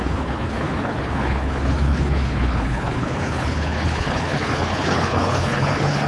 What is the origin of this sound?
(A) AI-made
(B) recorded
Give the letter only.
A